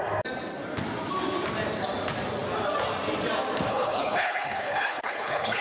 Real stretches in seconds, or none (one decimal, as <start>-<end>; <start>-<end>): 0.0-3.7